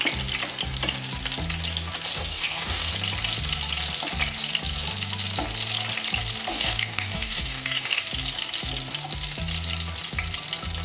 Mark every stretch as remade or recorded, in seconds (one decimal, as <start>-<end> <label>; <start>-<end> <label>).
0.0-2.1 recorded; 2.1-2.9 remade; 2.9-6.5 recorded; 6.5-8.0 remade; 8.0-10.8 recorded